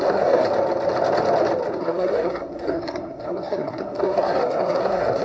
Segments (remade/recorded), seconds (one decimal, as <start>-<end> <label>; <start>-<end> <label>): 0.0-0.4 remade; 0.4-1.8 recorded; 1.8-5.2 remade